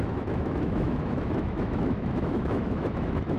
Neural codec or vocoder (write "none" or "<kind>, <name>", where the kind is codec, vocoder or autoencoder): autoencoder, DAC-VAE